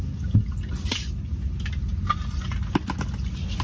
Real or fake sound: real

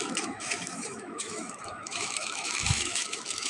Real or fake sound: fake